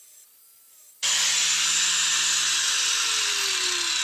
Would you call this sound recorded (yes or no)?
yes